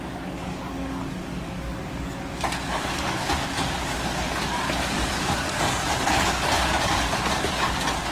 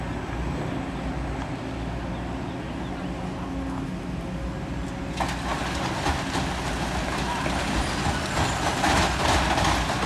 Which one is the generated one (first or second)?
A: first